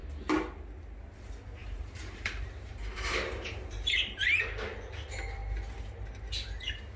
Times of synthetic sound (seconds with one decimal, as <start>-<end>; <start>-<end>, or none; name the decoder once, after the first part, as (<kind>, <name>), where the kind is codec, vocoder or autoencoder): 1.6-4.4 (vocoder, BigVGAN v2)